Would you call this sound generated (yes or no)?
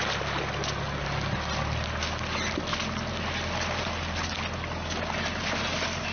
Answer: no